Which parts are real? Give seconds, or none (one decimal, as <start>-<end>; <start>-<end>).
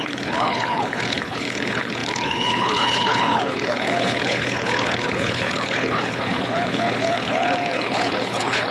none